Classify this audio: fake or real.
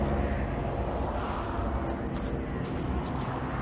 real